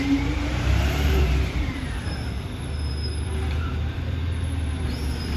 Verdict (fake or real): fake